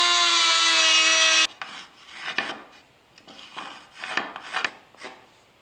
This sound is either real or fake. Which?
real